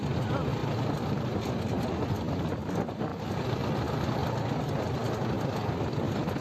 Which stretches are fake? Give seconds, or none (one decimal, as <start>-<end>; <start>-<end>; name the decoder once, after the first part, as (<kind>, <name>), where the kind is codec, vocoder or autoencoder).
none